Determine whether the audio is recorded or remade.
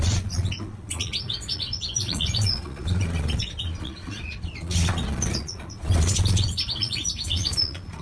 remade